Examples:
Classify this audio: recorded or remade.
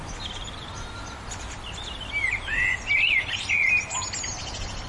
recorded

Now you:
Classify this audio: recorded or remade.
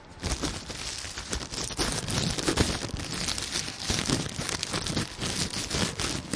recorded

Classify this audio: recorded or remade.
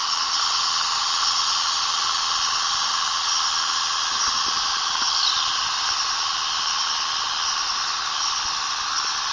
recorded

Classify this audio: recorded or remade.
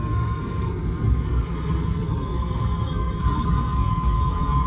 remade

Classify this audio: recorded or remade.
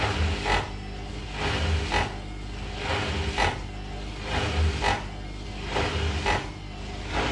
recorded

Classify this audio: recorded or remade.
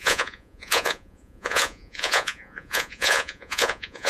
remade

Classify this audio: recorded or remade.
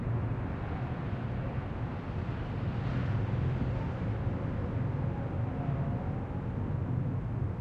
recorded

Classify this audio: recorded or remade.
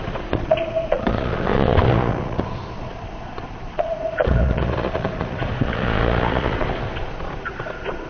remade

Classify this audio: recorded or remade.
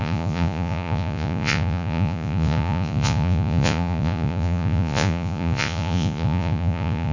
remade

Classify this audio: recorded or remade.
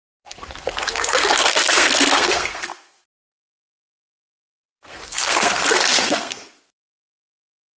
remade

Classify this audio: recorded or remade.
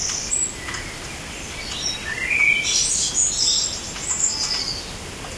recorded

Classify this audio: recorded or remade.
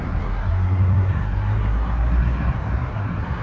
remade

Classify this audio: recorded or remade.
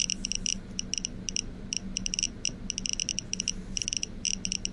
recorded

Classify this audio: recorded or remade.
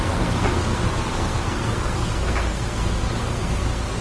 remade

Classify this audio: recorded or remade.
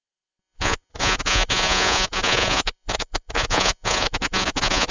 remade